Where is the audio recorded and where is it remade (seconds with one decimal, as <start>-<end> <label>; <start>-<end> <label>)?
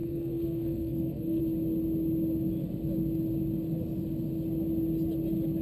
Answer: 0.0-1.4 remade; 1.4-5.6 recorded